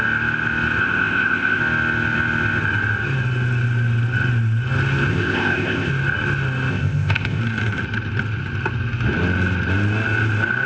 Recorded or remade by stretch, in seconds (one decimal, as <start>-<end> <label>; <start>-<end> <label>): 0.0-0.8 recorded; 0.8-1.6 remade; 1.6-5.1 recorded; 5.1-5.9 remade; 5.9-6.7 recorded; 6.7-7.4 remade; 7.4-10.7 recorded